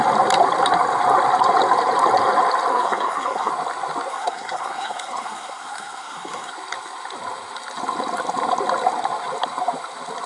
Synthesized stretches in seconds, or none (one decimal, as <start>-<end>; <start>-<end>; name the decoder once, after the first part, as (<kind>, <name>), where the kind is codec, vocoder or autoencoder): 2.7-3.5 (codec, SNAC); 4.1-6.5